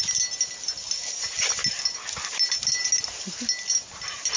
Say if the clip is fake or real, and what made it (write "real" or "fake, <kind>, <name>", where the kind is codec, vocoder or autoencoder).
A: real